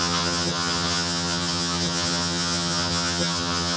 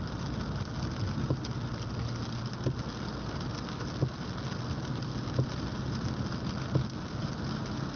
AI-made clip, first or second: first